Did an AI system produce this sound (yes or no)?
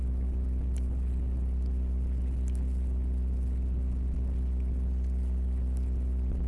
no